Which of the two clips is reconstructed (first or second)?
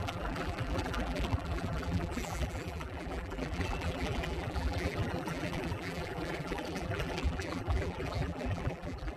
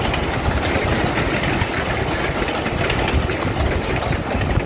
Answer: first